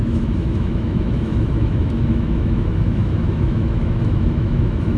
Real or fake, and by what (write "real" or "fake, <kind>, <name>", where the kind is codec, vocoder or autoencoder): fake, autoencoder, DAC-VAE